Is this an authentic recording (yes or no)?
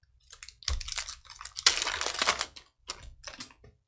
yes